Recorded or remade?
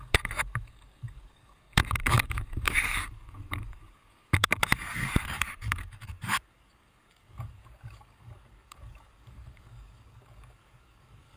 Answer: remade